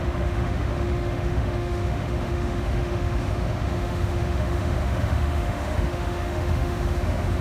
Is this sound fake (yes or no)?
yes